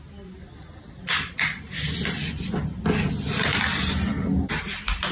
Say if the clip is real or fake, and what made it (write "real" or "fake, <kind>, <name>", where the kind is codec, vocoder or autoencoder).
real